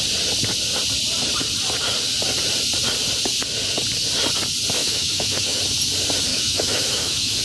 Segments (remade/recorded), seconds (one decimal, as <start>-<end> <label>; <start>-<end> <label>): 0.0-4.8 recorded; 4.8-5.6 remade; 5.6-6.3 recorded; 6.3-7.4 remade